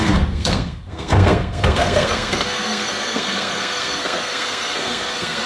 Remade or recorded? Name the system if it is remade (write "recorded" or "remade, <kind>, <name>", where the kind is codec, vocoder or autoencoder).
remade, codec, SNAC